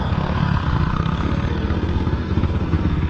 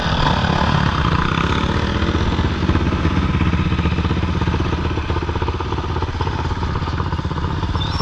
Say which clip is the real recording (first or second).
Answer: second